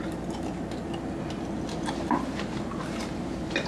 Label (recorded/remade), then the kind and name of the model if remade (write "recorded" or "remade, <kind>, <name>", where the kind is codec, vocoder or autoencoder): recorded